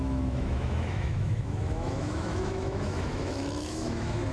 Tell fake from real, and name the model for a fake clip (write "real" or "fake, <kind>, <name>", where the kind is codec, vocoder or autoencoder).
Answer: fake, autoencoder, DAC-VAE